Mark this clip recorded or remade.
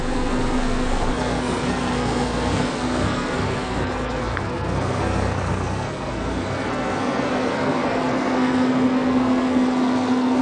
remade